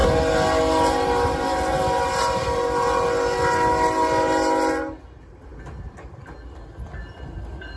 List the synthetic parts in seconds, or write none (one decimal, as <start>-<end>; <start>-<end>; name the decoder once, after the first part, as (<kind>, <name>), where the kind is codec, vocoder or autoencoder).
none